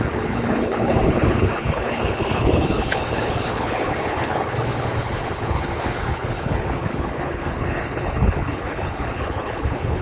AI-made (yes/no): yes